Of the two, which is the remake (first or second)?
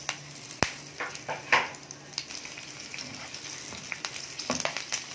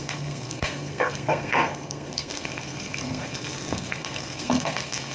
second